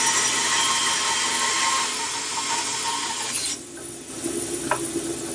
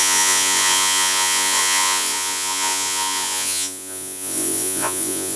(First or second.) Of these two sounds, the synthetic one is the second